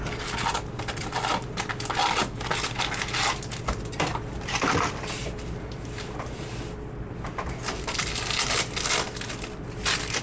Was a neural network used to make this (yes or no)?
no